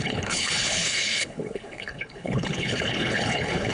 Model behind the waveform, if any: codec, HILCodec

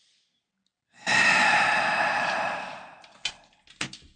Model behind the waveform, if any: none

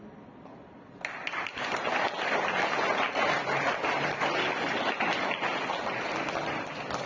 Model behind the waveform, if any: none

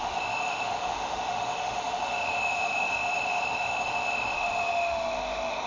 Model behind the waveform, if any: autoencoder, DAC-VAE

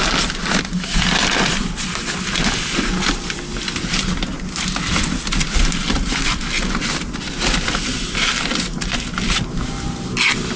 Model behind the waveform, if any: none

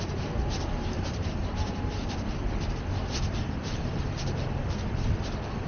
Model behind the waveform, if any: vocoder, BigVGAN v2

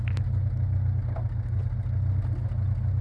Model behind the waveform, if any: none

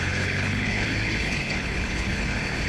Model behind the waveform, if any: codec, HILCodec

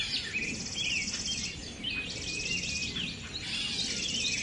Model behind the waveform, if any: none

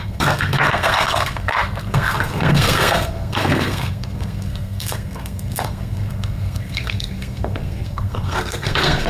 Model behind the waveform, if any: codec, SNAC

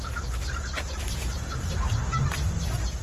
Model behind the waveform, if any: none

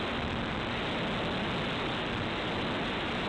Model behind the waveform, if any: none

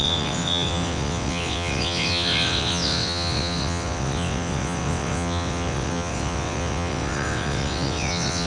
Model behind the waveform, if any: vocoder, WaveNeXt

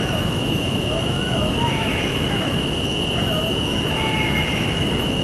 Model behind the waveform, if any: autoencoder, DAC-VAE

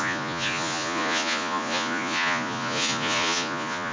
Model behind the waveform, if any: vocoder, Vocos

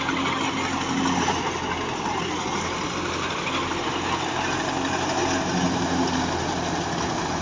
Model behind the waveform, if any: none